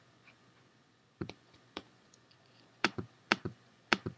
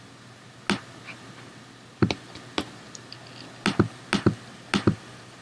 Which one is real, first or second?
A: second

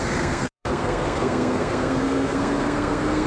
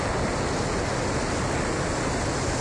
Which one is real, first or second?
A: second